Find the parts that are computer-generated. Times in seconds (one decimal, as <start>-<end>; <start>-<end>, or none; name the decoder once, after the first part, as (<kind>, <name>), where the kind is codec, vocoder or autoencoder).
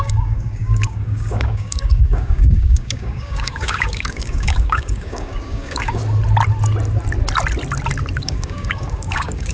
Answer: 0.0-6.0 (codec, DAC); 8.2-9.5